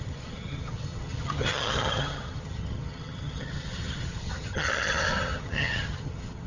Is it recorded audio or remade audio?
remade